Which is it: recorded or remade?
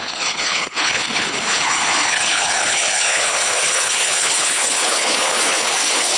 remade